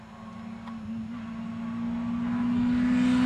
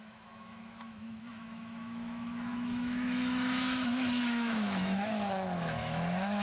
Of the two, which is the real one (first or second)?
first